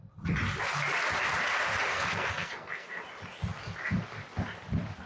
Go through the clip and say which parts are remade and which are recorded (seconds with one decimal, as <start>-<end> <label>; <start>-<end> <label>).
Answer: 0.0-1.9 recorded; 1.9-3.0 remade; 3.0-5.1 recorded